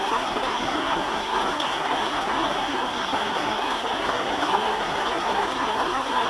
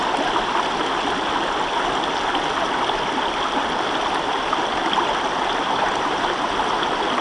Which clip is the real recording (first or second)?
second